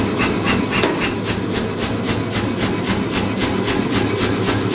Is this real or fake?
real